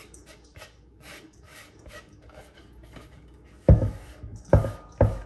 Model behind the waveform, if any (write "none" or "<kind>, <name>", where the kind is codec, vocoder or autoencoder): codec, DAC